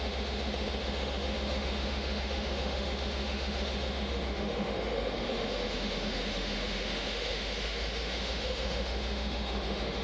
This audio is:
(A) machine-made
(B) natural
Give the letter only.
A